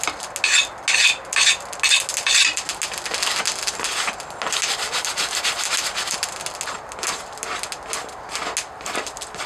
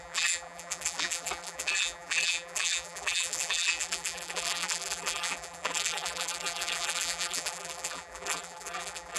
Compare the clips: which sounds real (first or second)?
first